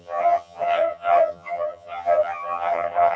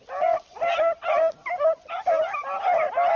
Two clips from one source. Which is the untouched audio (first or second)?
second